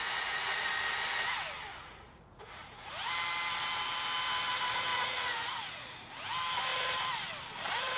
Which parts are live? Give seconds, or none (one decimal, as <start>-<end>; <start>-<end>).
0.7-1.7; 2.9-4.9; 6.1-8.0